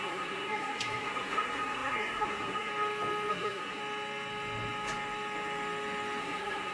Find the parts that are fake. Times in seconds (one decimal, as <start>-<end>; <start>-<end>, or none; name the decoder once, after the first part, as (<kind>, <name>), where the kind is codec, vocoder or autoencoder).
0.0-2.7 (codec, SNAC); 3.3-3.8; 6.2-6.7